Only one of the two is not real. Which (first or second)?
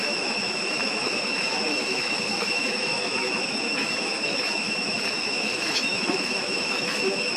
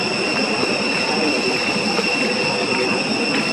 first